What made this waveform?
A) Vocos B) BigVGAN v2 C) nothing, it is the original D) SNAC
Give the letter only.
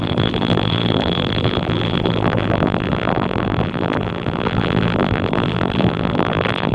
B